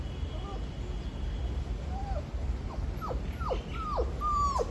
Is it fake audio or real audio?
real